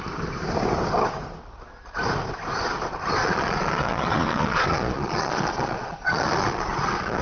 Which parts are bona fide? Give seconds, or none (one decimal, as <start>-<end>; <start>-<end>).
0.0-3.2